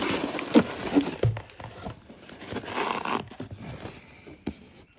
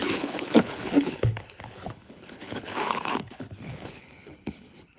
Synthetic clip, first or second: second